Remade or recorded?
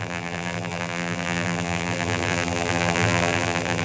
remade